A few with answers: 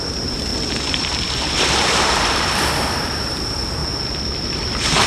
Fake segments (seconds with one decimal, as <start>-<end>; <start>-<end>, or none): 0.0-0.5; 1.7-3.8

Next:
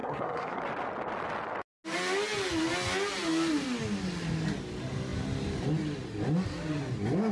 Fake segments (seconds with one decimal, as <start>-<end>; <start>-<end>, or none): 0.0-0.6

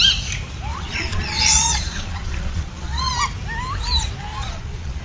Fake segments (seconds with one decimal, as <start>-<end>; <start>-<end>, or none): 0.7-3.1; 4.3-5.0

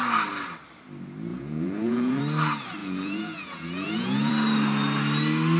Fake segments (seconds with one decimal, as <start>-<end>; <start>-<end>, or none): 1.3-2.2; 2.8-4.3

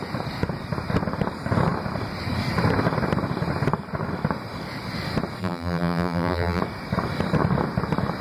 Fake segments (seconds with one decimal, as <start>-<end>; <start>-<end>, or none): 5.4-6.6